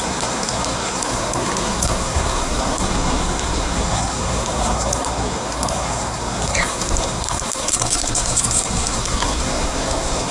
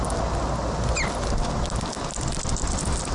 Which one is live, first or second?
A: second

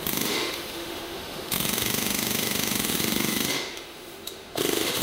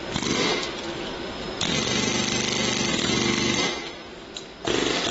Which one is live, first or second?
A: second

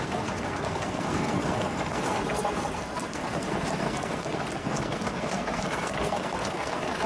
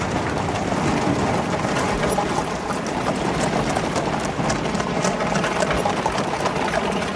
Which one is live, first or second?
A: second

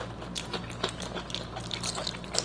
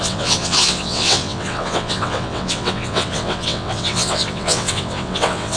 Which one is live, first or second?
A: first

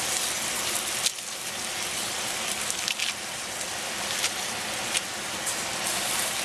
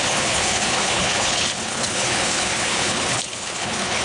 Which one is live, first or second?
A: first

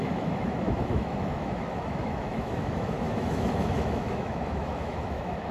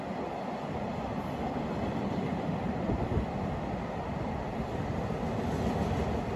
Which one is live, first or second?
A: second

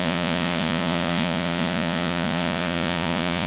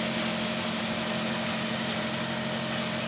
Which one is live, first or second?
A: second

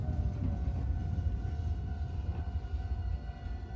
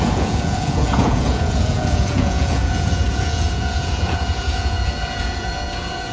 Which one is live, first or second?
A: first